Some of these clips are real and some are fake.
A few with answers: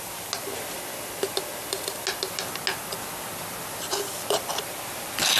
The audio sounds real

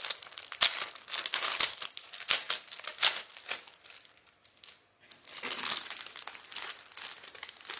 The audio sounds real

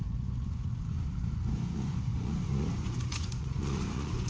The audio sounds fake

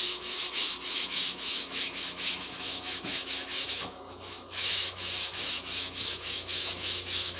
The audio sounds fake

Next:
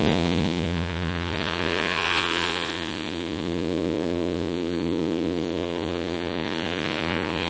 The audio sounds fake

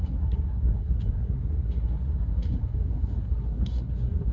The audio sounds fake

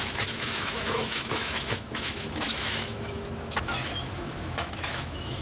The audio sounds fake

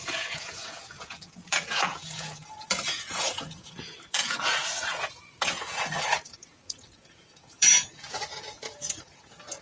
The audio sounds fake